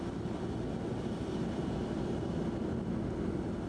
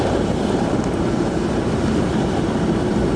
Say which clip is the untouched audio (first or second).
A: first